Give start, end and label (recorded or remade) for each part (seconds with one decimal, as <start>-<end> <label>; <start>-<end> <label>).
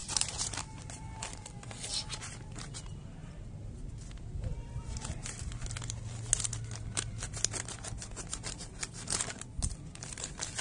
0.0-1.0 remade; 1.0-3.2 recorded; 3.2-3.9 remade; 3.9-10.6 recorded